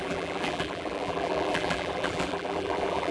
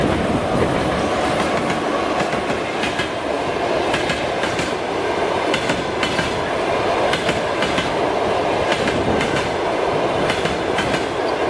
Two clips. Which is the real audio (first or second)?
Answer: second